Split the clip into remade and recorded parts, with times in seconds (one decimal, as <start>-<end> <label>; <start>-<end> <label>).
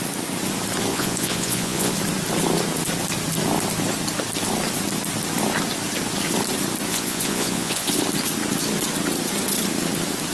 0.0-0.9 recorded; 0.9-1.9 remade; 1.9-6.9 recorded; 6.9-7.9 remade; 7.9-10.3 recorded